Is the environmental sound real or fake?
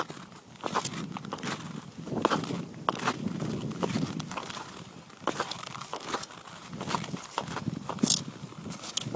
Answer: real